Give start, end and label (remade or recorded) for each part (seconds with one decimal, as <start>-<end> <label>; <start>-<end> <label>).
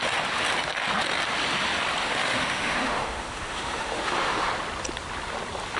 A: 0.0-2.0 recorded; 2.0-4.5 remade; 4.5-5.8 recorded